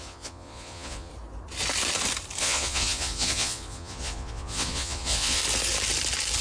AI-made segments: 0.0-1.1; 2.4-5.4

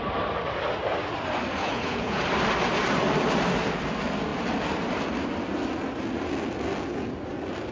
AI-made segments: 1.6-2.2

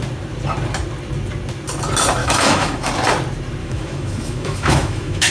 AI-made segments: 2.2-2.9; 3.6-5.3

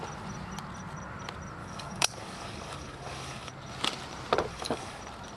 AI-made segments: 1.6-3.5; 4.5-5.0